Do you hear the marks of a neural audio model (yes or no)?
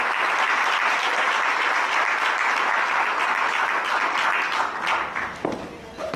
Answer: no